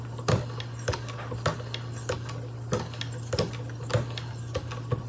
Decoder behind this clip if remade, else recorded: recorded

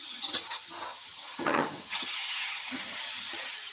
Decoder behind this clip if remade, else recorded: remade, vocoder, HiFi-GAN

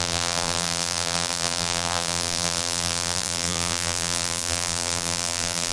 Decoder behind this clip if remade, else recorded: remade, vocoder, BigVGAN v2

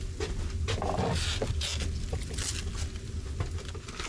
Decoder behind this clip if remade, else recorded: recorded